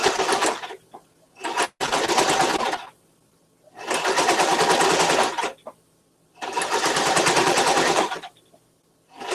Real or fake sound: real